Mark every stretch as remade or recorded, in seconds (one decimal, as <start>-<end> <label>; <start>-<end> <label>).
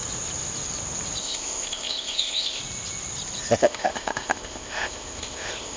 0.0-1.2 recorded; 1.2-2.6 remade; 2.6-3.6 recorded; 3.6-5.8 remade